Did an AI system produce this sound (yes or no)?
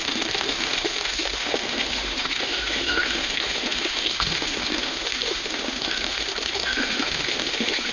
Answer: yes